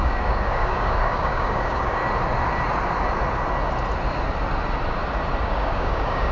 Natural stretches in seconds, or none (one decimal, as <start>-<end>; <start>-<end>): 2.0-5.4